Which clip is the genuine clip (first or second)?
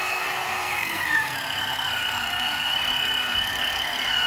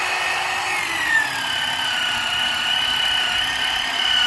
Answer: second